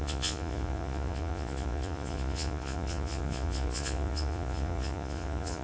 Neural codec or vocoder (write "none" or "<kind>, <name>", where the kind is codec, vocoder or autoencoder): vocoder, Vocos